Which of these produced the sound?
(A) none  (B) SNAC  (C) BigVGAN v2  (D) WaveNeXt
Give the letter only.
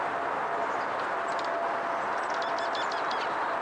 A